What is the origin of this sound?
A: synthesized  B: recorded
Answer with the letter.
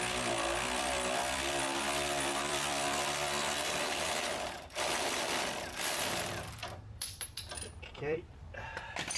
A